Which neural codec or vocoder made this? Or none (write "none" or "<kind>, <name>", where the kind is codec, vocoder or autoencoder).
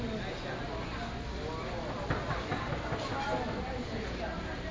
none